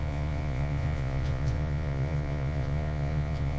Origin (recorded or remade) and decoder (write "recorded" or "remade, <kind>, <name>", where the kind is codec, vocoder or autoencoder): remade, vocoder, Vocos